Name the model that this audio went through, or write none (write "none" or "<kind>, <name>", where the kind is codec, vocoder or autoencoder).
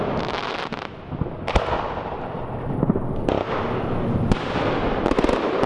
none